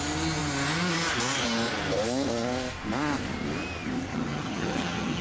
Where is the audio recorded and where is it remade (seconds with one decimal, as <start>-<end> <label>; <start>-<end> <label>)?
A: 0.0-4.1 recorded; 4.1-5.2 remade